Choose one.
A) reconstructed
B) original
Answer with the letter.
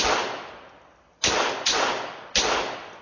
B